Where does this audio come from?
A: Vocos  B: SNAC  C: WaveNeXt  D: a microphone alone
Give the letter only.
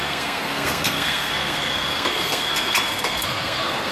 B